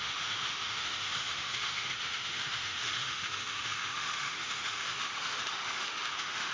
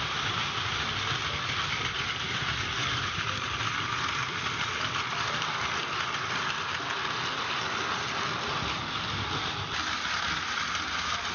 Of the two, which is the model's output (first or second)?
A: first